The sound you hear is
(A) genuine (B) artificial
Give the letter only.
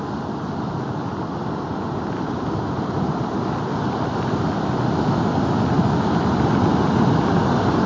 A